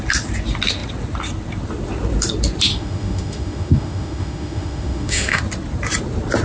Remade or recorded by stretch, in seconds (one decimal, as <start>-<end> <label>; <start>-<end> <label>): 0.0-2.7 recorded; 2.7-5.4 remade; 5.4-6.4 recorded